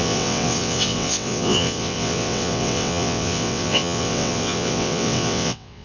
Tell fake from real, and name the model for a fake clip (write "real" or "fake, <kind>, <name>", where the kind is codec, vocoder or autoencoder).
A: fake, vocoder, WaveNeXt